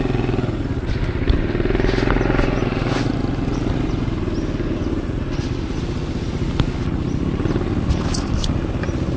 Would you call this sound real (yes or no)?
yes